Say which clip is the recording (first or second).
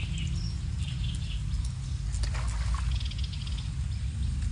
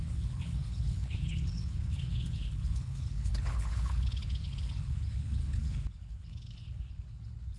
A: first